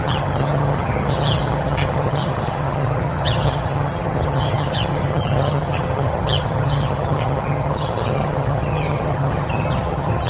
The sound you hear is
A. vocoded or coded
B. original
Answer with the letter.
A